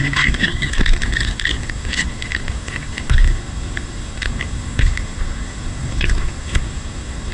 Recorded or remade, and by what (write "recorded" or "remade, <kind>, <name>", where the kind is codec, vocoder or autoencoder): remade, codec, SNAC